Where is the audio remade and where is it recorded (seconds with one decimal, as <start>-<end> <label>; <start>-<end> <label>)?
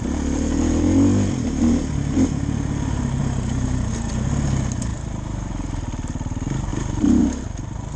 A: 0.0-3.2 recorded; 3.2-3.9 remade; 3.9-4.9 recorded; 4.9-5.5 remade; 5.5-6.7 recorded; 6.7-7.2 remade; 7.2-8.0 recorded